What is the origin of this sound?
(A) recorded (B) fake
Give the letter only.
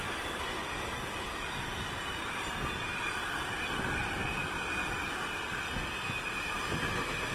A